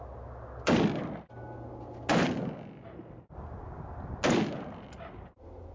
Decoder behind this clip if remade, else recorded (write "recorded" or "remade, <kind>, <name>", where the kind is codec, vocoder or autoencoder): recorded